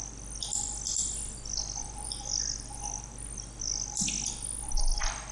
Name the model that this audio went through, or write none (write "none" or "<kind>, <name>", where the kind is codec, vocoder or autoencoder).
none